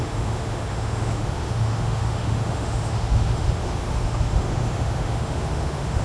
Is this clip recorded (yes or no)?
no